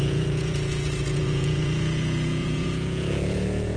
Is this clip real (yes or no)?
no